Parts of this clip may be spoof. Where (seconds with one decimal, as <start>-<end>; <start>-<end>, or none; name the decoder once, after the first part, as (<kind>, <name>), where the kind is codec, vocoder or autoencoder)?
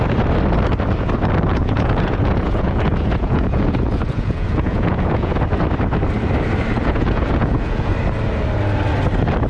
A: 1.5-5.4 (vocoder, Vocos); 6.8-7.9